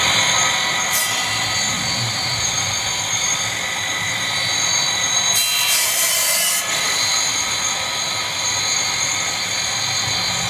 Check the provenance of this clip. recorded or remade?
recorded